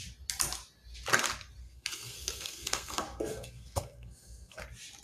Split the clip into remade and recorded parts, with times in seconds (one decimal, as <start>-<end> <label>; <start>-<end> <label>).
0.0-1.6 recorded; 1.6-4.6 remade; 4.6-5.0 recorded